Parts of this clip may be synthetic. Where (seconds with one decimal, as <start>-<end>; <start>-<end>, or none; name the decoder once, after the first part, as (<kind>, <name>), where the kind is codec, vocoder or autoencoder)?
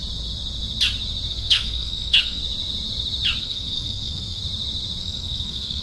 1.3-2.4 (codec, SNAC); 3.4-4.4; 5.0-5.8